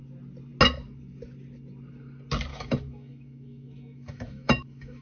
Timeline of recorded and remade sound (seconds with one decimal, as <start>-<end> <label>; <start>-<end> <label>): 0.0-2.5 recorded; 2.5-5.0 remade